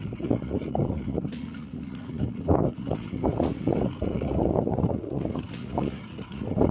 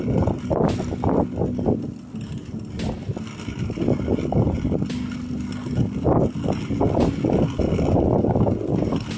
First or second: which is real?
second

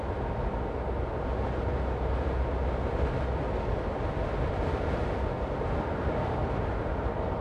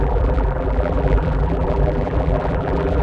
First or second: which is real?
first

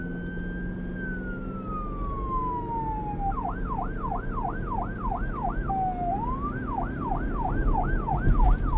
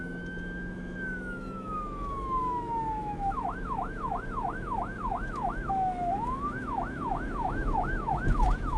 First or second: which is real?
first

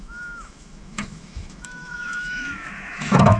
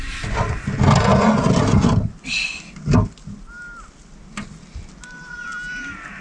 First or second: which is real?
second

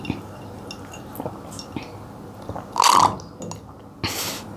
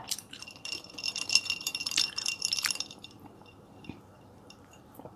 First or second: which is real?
first